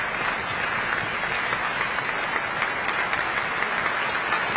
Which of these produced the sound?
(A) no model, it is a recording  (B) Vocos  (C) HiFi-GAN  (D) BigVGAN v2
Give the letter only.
A